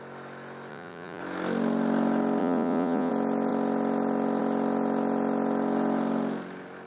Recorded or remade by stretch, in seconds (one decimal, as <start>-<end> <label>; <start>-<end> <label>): 0.0-0.7 recorded; 0.7-1.2 remade; 1.2-2.4 recorded; 2.4-3.1 remade; 3.1-6.9 recorded